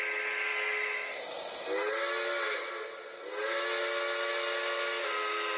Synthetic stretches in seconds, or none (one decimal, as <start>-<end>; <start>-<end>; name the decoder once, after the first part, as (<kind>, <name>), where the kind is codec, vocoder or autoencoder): none